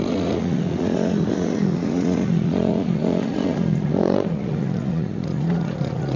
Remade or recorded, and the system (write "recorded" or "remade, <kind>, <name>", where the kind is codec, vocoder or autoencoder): remade, vocoder, Vocos